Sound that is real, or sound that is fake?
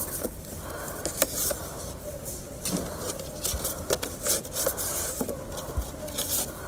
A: real